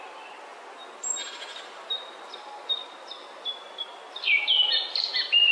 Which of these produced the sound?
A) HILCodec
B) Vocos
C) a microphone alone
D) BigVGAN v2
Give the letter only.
C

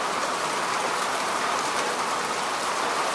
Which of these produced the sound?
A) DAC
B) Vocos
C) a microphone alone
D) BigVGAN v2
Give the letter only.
D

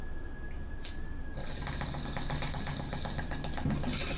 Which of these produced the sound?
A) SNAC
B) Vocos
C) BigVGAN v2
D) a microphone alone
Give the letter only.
D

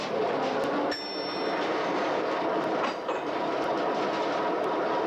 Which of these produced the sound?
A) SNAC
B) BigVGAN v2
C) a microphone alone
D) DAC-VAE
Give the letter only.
C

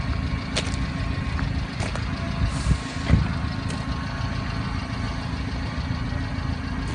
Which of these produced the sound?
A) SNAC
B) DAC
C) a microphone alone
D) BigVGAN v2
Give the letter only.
C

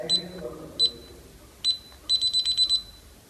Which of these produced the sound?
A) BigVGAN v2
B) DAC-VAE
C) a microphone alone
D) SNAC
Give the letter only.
C